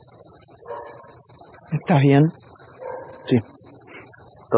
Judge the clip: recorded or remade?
recorded